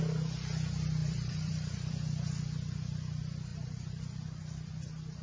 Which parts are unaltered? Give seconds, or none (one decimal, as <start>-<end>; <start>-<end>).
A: 0.0-1.0; 1.9-3.5; 4.0-5.2